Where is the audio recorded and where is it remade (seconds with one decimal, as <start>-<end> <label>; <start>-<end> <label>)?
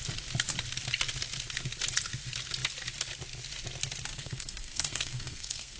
0.0-4.1 recorded; 4.1-5.8 remade